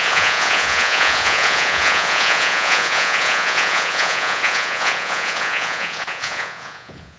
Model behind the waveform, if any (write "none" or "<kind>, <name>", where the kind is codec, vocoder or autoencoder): vocoder, Vocos